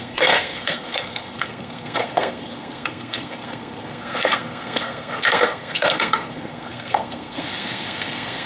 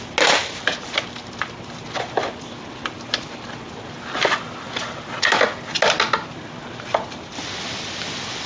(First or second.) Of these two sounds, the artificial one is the first